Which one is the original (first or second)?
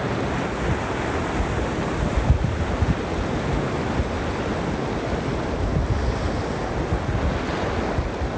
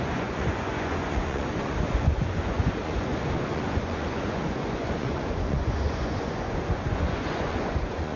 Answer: first